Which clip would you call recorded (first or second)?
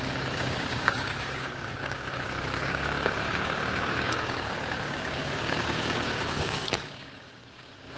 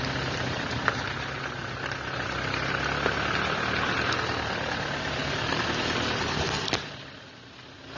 second